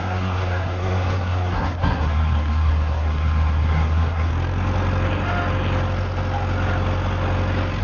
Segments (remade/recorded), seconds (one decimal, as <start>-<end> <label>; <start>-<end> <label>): 0.0-4.3 remade; 4.3-7.8 recorded